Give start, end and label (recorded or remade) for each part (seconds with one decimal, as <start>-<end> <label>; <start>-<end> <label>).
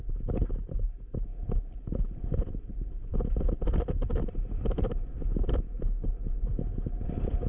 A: 0.0-7.5 recorded